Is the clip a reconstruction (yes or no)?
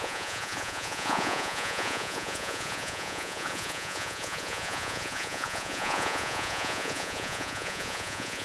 yes